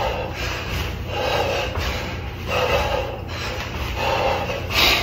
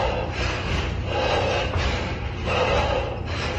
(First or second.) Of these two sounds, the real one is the first